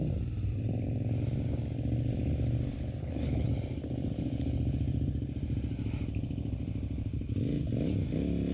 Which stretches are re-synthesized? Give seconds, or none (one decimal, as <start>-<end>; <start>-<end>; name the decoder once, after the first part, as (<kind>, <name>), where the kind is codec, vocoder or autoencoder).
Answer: 3.0-3.5 (codec, HILCodec)